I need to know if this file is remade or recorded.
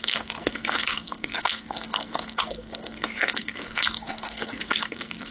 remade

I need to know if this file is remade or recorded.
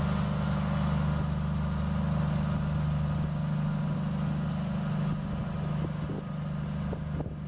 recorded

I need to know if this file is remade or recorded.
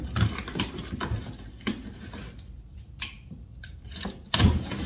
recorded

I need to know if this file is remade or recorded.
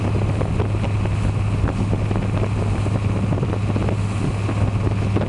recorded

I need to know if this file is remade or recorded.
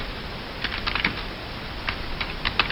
remade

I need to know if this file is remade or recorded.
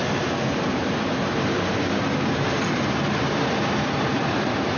remade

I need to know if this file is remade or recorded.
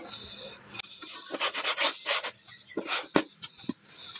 recorded